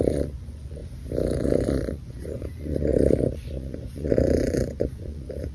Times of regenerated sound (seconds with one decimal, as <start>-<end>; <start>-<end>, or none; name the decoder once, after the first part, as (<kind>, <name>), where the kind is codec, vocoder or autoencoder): 0.0-0.8 (vocoder, Vocos); 1.4-5.5

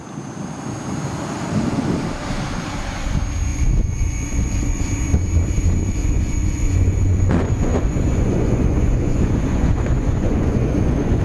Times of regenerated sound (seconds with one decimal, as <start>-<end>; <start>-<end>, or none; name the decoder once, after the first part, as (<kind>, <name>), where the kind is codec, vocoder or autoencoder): 3.5-4.8 (vocoder, Vocos); 6.0-11.2